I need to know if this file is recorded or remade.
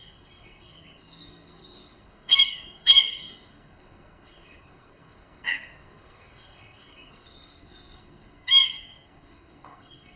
remade